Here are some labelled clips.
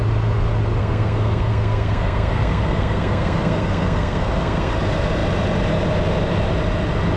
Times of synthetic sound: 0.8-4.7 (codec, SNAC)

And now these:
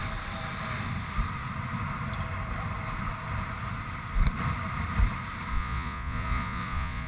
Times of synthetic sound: 5.5-7.1 (vocoder, Vocos)

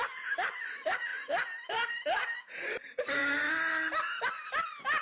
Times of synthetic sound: 0.0-3.2 (vocoder, BigVGAN v2); 4.3-5.0

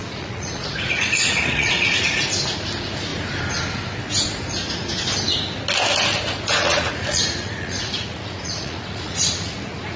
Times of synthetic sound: 0.0-2.2 (vocoder, Vocos); 6.5-10.0

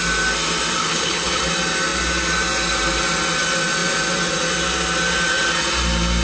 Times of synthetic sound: 0.8-1.4 (codec, HILCodec)

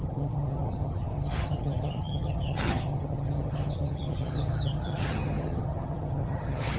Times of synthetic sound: 0.0-6.8 (vocoder, HiFi-GAN)

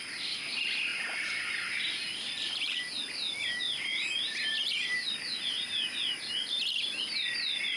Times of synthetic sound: 0.9-2.8 (vocoder, BigVGAN v2); 4.6-7.0

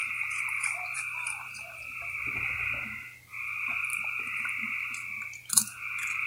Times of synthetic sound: 0.0-2.7 (vocoder, BigVGAN v2); 3.3-5.1